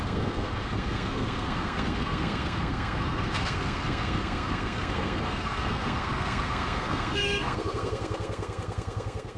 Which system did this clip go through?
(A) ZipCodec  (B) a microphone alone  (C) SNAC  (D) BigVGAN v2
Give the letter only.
C